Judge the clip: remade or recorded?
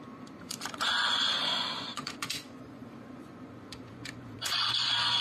remade